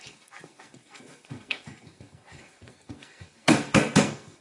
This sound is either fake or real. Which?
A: fake